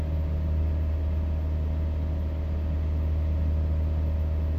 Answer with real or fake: real